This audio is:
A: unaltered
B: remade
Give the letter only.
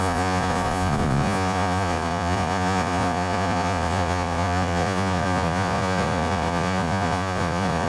B